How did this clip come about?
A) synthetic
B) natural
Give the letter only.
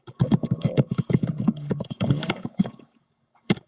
A